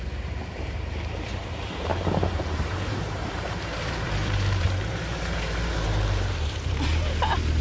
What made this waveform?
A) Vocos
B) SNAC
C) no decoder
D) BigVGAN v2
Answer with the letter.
D